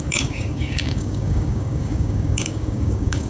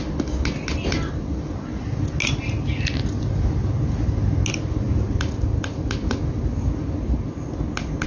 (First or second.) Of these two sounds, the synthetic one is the first